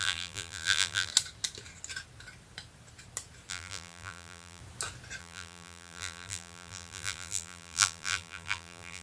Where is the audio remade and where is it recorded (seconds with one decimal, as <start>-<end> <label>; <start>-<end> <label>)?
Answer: 0.0-1.1 remade; 1.1-3.5 recorded; 3.5-4.6 remade; 4.6-5.2 recorded; 5.2-9.0 remade

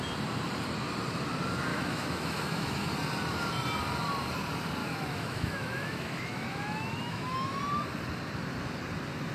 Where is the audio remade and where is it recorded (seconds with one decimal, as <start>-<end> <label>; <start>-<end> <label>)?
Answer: 0.0-1.7 recorded; 1.7-2.9 remade; 2.9-4.8 recorded; 4.8-7.6 remade; 7.6-9.3 recorded

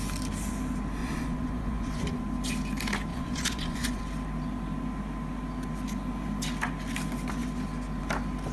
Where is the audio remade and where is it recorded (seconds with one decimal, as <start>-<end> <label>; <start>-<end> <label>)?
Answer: 0.0-1.0 recorded; 1.0-2.2 remade; 2.2-3.1 recorded; 3.1-4.0 remade; 4.0-8.5 recorded

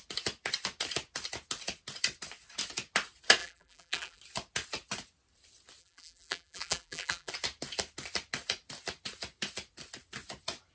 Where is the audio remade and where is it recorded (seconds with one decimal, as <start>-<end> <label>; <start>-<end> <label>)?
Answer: 0.0-3.4 recorded; 3.4-4.2 remade; 4.2-5.8 recorded; 5.8-7.3 remade; 7.3-10.7 recorded